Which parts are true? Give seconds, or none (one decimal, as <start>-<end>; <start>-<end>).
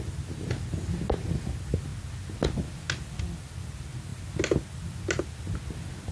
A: 0.0-6.1